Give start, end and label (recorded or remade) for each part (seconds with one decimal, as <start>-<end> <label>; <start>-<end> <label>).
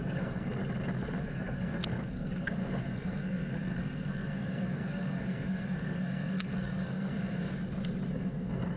0.0-0.6 remade; 0.6-1.2 recorded; 1.2-7.4 remade; 7.4-8.1 recorded; 8.1-8.8 remade